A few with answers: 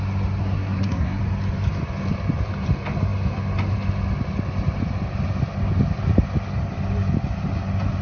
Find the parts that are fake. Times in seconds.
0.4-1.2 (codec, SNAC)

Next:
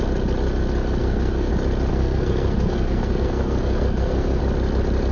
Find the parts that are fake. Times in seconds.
1.0-1.5 (codec, SNAC); 1.9-4.4